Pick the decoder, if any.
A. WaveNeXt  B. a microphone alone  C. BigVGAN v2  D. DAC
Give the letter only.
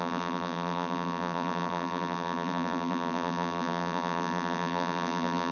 C